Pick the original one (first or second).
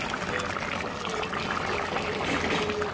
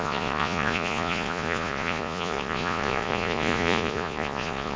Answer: first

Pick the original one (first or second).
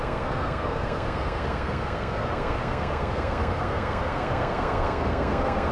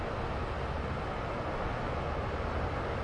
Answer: second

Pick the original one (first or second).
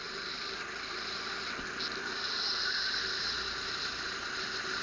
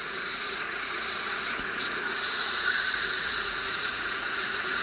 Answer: first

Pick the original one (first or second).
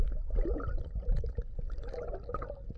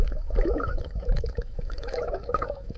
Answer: first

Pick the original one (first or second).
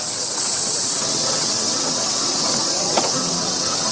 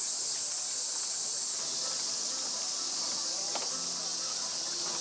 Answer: second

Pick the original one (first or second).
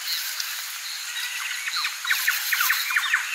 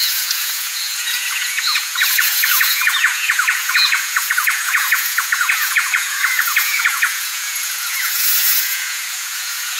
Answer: first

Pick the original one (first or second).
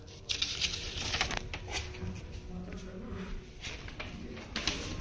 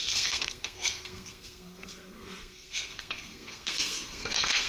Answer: first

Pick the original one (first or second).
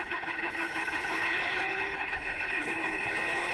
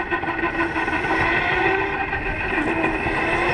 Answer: second